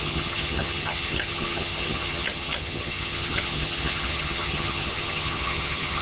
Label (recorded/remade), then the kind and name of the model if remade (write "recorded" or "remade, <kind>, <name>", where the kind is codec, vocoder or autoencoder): remade, vocoder, HiFi-GAN